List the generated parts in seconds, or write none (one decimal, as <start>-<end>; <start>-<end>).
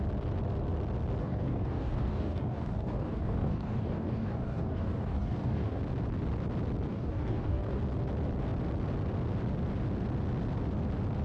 1.2-5.8; 6.9-7.8